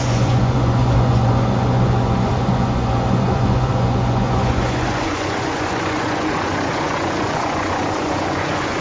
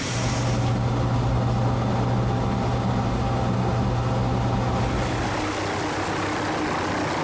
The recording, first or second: second